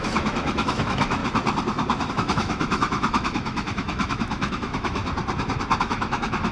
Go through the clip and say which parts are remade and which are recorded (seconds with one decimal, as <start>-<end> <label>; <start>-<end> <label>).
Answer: 0.0-1.2 remade; 1.2-2.1 recorded; 2.1-5.0 remade; 5.0-5.8 recorded; 5.8-6.5 remade